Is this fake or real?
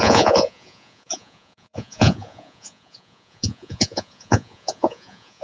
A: fake